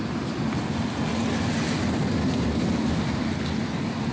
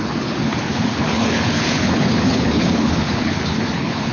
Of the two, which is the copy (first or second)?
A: second